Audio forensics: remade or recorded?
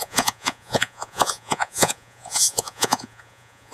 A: remade